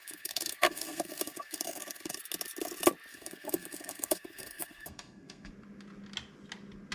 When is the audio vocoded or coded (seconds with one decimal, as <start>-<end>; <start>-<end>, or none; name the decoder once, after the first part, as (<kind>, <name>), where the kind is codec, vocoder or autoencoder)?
0.0-2.2 (codec, SNAC); 3.1-5.5

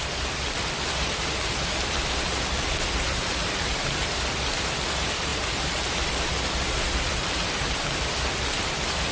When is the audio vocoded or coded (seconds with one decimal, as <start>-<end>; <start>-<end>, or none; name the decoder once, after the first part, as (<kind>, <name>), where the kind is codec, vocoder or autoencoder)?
0.0-9.1 (vocoder, BigVGAN v2)

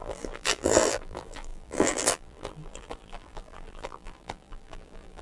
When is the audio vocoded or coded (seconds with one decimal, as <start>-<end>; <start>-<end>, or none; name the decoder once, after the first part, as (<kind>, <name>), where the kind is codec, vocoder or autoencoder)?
0.0-5.2 (vocoder, BigVGAN v2)

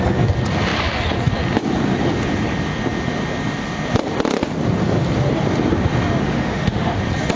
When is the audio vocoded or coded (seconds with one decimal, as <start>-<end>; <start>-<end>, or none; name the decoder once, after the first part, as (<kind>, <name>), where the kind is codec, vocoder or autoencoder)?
6.2-7.0 (autoencoder, DAC-VAE)

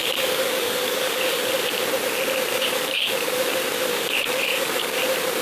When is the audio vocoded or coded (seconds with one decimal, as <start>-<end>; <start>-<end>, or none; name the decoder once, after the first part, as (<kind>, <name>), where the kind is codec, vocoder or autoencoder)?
0.0-1.5 (codec, DAC); 2.5-3.5; 3.9-5.0

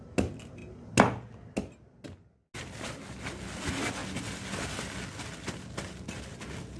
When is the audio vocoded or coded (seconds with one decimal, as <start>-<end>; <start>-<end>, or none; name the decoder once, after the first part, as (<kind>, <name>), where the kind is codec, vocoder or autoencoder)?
none

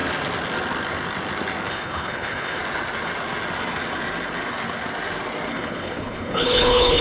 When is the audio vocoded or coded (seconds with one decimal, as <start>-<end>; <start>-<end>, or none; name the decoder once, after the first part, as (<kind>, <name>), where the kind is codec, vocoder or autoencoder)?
1.7-2.6 (codec, HILCodec); 5.5-7.0